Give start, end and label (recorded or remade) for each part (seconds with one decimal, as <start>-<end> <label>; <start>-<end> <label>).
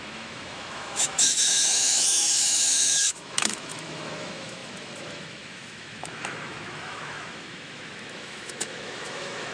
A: 0.0-9.5 remade